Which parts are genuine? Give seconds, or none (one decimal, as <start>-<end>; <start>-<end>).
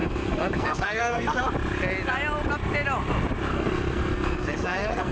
1.4-3.5